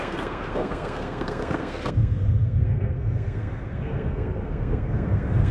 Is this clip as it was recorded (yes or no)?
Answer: no